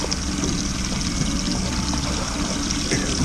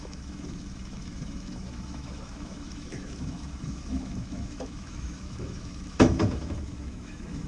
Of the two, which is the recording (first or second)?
first